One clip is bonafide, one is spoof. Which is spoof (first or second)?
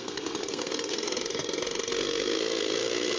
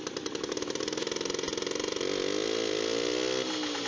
first